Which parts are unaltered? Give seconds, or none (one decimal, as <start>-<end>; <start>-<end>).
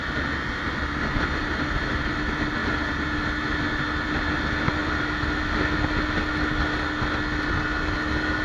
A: 0.0-8.4